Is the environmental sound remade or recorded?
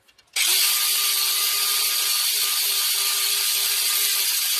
recorded